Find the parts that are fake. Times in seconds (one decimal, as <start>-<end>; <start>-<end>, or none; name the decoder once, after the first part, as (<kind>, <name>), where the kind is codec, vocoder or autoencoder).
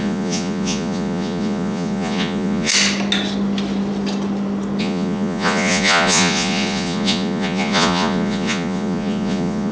0.0-2.7 (vocoder, Vocos); 4.8-9.7